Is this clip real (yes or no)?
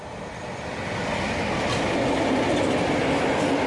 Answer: yes